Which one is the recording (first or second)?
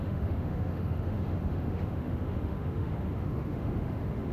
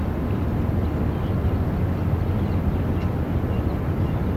second